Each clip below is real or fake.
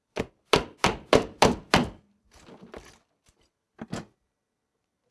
real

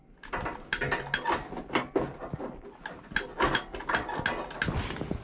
real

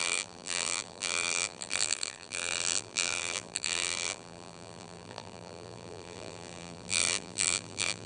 fake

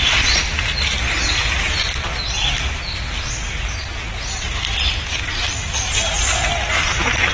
real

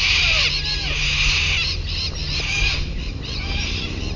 real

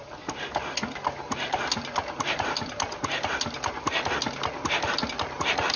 real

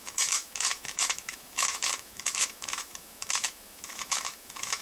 fake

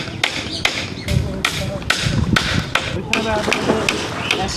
real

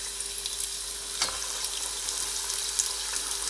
real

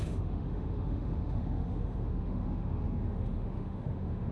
fake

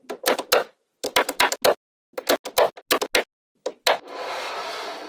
real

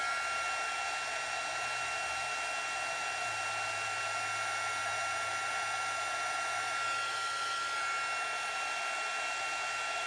real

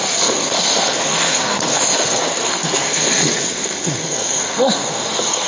fake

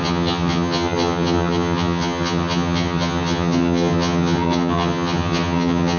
fake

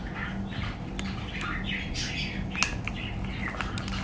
real